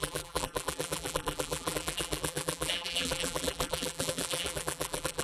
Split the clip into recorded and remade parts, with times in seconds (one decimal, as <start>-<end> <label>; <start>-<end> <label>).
0.0-5.2 remade